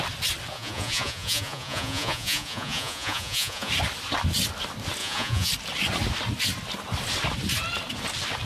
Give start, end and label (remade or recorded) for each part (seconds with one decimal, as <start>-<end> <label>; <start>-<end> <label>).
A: 0.0-0.5 recorded; 0.5-3.7 remade; 3.7-5.0 recorded; 5.0-5.5 remade; 5.5-8.5 recorded